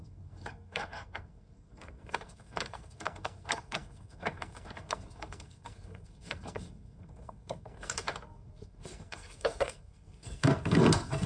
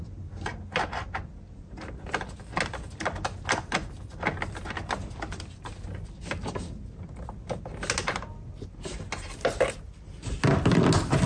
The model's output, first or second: first